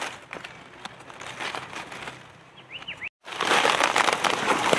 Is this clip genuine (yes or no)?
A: yes